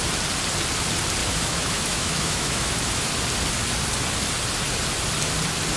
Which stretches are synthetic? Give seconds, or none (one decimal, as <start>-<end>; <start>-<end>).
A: 1.2-3.1